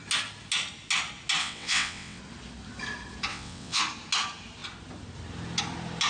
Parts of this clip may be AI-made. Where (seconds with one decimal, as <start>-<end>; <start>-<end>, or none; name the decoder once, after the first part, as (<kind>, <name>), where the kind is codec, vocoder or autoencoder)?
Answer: 1.4-2.2 (vocoder, WaveNeXt); 3.3-3.8